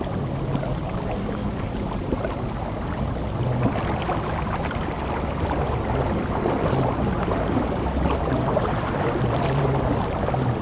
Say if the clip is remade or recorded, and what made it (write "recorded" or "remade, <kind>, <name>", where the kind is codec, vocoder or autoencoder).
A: recorded